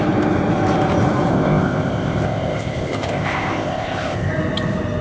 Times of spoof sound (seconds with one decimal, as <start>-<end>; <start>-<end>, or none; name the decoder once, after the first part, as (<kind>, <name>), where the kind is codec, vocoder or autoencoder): 1.3-4.3 (codec, ZipCodec)